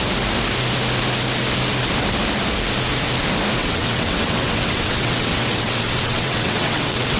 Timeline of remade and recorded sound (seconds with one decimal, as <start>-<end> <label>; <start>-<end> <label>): 0.0-3.6 recorded; 3.6-7.2 remade